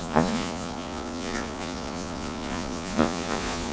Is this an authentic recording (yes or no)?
no